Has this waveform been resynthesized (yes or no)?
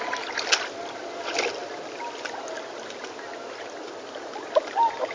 no